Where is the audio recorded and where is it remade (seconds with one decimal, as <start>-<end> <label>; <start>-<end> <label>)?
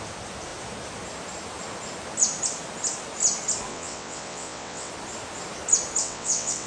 0.0-3.7 recorded; 3.7-4.9 remade; 4.9-6.0 recorded; 6.0-6.7 remade